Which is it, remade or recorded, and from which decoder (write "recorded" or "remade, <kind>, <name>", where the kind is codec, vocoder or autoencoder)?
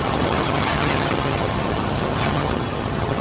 remade, vocoder, HiFi-GAN